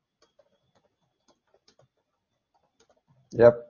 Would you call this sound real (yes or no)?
yes